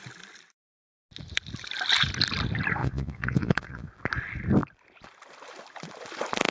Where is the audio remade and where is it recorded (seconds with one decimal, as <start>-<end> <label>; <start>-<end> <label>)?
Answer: 0.0-2.8 recorded; 2.8-3.9 remade; 3.9-6.5 recorded